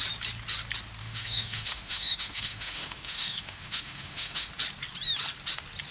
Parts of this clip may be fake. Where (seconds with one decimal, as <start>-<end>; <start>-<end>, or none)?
1.0-4.5